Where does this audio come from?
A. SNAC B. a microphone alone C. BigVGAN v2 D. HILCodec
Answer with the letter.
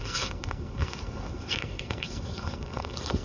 A